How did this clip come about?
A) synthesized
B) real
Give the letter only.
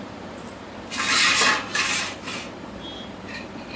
A